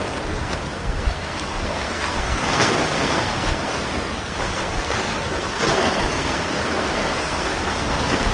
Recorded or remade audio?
remade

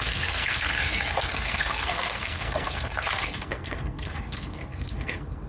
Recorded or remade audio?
remade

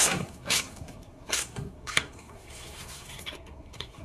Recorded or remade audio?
remade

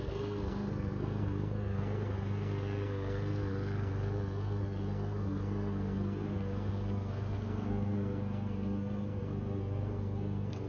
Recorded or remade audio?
remade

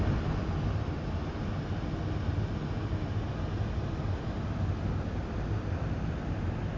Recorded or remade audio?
recorded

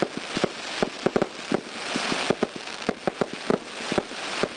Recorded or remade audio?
recorded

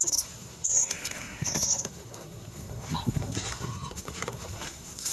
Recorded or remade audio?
remade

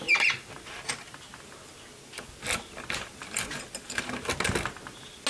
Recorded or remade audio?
recorded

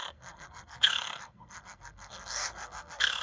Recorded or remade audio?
remade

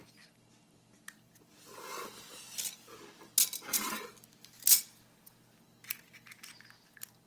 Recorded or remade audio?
recorded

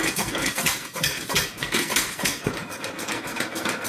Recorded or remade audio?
remade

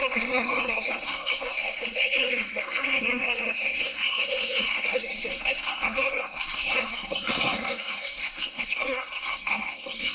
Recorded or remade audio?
remade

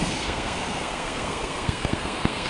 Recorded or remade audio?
remade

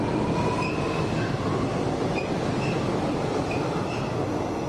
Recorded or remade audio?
recorded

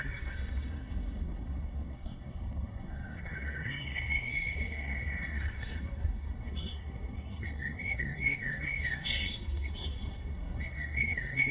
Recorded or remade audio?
remade